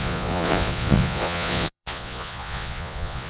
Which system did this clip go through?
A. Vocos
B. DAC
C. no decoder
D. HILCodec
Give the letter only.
A